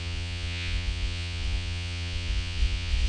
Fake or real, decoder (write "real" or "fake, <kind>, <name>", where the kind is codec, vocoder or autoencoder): fake, vocoder, Vocos